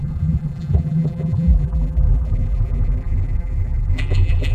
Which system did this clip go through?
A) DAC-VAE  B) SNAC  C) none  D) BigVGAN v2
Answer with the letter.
D